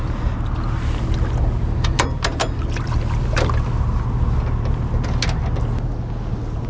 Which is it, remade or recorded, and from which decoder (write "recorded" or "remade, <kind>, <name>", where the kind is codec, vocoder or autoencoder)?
recorded